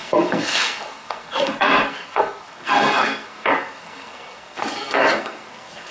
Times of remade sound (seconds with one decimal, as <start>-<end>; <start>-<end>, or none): 0.0-5.9